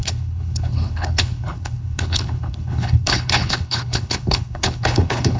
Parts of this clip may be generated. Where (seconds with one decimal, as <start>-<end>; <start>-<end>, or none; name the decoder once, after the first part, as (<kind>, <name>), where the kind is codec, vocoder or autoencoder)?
0.0-5.4 (codec, HILCodec)

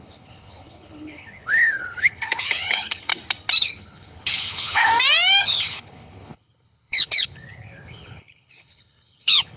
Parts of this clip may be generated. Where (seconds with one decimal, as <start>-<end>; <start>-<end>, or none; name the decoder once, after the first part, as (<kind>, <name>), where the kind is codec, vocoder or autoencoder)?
0.0-3.1 (codec, HILCodec); 3.6-4.9; 5.4-9.6

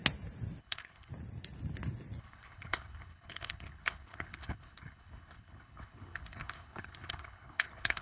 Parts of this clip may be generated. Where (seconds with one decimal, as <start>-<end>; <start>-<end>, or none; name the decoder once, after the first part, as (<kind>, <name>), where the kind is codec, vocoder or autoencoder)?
0.6-1.1 (codec, HILCodec); 2.2-8.0